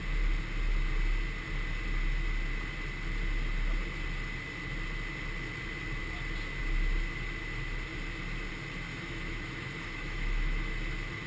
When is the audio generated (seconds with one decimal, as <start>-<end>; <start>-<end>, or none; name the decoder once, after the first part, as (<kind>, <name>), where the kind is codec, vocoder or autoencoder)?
8.9-10.7 (autoencoder, DAC-VAE)